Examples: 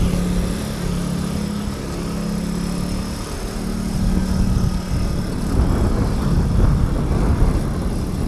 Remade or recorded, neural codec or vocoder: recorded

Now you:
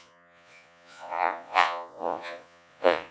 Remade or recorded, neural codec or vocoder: remade, vocoder, Vocos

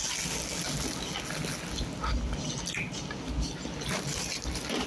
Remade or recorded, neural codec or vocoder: recorded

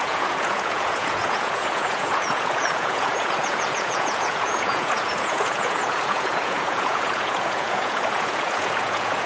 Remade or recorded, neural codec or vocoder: remade, vocoder, Vocos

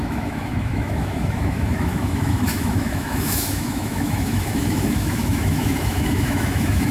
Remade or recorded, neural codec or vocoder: remade, autoencoder, DAC-VAE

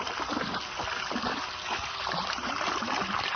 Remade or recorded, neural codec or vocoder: recorded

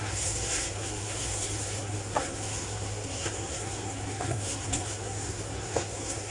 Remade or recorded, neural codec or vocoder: remade, codec, SNAC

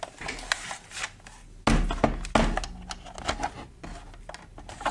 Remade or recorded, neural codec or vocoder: recorded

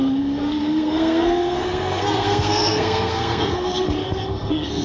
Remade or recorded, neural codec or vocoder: remade, codec, SNAC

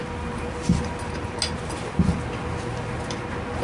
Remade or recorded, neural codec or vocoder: recorded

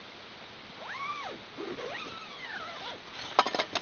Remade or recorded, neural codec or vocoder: recorded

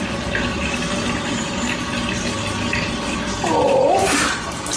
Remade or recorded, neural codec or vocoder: recorded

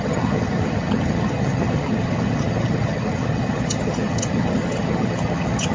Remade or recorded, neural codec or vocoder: remade, vocoder, HiFi-GAN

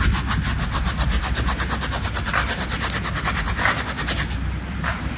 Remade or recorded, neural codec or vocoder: recorded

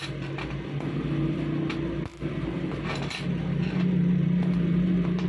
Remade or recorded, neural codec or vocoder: recorded